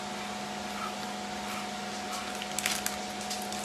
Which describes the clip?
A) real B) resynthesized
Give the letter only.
A